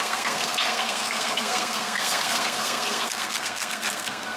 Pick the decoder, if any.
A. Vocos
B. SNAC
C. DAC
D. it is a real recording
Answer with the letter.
B